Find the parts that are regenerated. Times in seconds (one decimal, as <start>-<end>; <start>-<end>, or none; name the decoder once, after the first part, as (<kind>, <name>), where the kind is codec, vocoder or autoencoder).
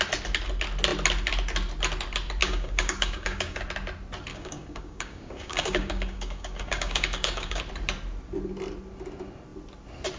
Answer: 2.4-3.6 (codec, DAC); 4.3-7.6